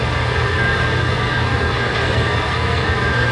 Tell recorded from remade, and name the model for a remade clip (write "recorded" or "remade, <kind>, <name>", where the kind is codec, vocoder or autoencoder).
remade, codec, SNAC